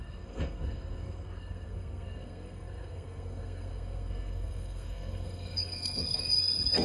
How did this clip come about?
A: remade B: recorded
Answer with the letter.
A